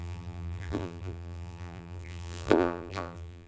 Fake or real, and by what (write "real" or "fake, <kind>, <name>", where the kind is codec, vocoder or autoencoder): fake, vocoder, BigVGAN v2